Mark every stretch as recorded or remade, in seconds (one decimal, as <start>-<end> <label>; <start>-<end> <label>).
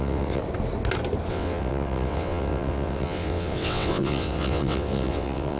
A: 0.0-0.4 remade; 0.4-1.3 recorded; 1.3-5.6 remade